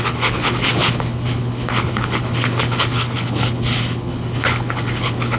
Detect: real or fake fake